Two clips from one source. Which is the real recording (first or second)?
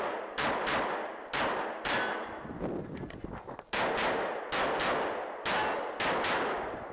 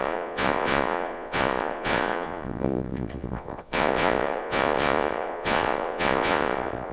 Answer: first